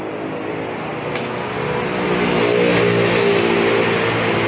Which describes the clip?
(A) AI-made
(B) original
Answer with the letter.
B